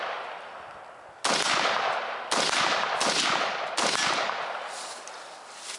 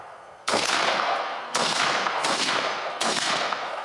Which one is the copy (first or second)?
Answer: second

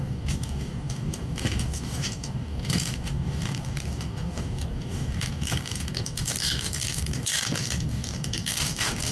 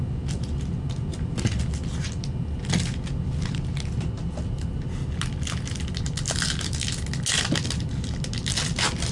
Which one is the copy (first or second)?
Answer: first